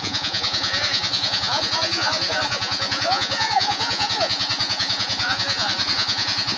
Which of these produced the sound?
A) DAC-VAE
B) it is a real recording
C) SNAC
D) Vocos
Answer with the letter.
D